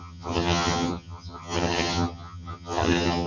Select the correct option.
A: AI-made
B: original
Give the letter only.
A